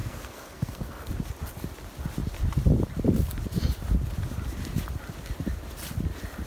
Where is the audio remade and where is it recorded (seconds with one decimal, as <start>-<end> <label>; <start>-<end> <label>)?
0.0-1.1 remade; 1.1-6.5 recorded